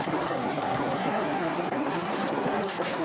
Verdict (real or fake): fake